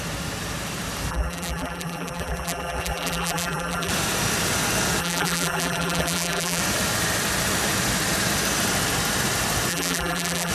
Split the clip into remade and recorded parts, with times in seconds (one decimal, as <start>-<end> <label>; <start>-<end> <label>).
0.0-1.1 recorded; 1.1-3.9 remade; 3.9-5.0 recorded; 5.0-6.6 remade; 6.6-9.7 recorded; 9.7-10.5 remade